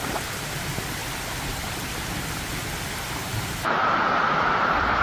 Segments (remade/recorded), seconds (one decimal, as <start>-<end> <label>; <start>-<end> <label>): 0.0-1.0 remade; 1.0-2.9 recorded; 2.9-5.0 remade

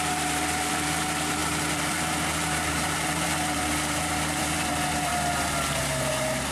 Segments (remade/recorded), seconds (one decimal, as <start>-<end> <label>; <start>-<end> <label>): 0.0-5.1 remade; 5.1-5.8 recorded; 5.8-6.5 remade